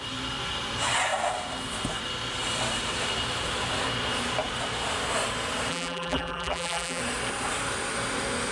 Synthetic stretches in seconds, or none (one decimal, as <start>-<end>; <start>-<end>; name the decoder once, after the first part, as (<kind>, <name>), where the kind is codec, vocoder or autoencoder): 5.7-7.0 (vocoder, BigVGAN v2)